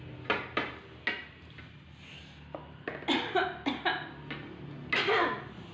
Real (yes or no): yes